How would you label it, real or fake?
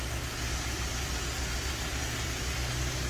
real